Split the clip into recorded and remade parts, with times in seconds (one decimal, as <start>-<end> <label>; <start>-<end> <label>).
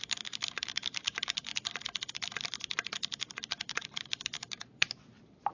0.0-1.5 remade; 1.5-2.4 recorded; 2.4-5.5 remade